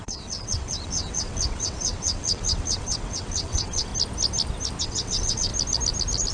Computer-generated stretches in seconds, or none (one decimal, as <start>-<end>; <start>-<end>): 0.0-3.9; 4.8-5.5